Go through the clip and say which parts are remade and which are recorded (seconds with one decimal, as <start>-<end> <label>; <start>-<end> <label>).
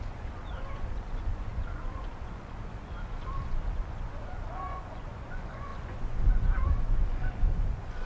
0.0-8.1 remade